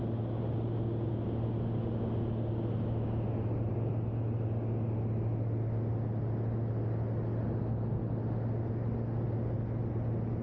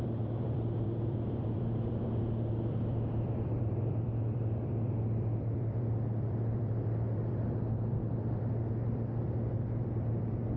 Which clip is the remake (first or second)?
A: second